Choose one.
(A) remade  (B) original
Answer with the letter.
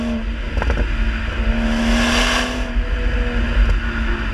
B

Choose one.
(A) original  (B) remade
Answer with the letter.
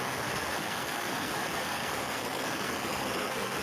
B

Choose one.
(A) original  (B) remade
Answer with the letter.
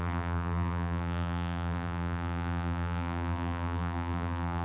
B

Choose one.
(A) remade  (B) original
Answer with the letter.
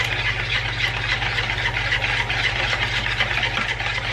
B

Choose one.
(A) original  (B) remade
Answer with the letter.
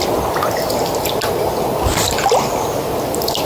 A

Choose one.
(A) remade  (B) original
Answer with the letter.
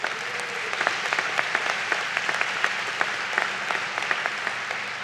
A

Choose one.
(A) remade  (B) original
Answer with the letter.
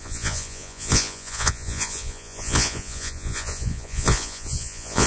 A